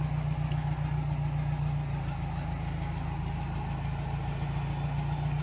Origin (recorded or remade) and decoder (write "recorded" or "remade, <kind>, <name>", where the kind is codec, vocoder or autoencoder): recorded